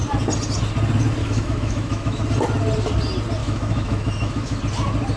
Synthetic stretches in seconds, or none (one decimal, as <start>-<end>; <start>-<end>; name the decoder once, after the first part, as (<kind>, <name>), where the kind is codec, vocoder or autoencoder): 1.2-2.2 (autoencoder, DAC-VAE); 3.4-4.6